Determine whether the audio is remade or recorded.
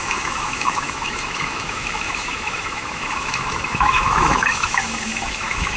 remade